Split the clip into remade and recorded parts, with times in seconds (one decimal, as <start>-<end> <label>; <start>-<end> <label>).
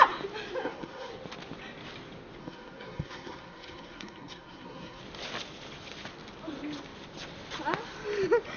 0.0-0.6 recorded; 0.6-1.1 remade; 1.1-2.4 recorded; 2.4-5.0 remade; 5.0-8.6 recorded